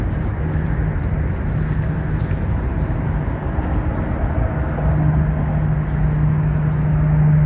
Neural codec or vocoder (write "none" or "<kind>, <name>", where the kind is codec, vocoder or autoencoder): none